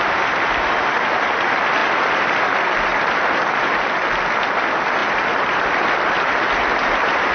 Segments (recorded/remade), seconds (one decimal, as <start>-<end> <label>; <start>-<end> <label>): 0.0-1.8 recorded; 1.8-2.4 remade; 2.4-2.9 recorded; 2.9-3.7 remade; 3.7-5.0 recorded; 5.0-7.3 remade